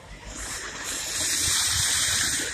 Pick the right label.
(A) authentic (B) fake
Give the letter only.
B